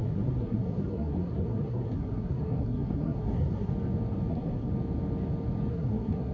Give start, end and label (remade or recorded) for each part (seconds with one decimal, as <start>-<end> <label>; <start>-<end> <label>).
0.0-3.7 remade; 3.7-4.3 recorded; 4.3-4.7 remade; 4.7-5.7 recorded; 5.7-6.3 remade